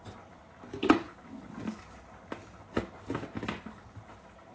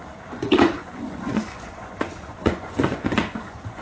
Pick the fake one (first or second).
second